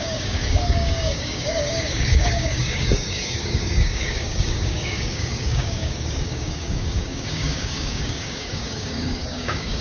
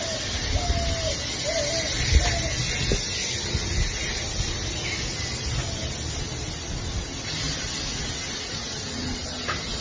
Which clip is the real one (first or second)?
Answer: second